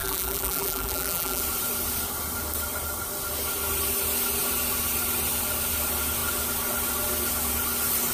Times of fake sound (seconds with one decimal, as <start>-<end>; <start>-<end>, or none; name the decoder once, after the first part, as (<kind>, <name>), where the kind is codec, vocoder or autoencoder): 0.0-1.4 (vocoder, BigVGAN v2)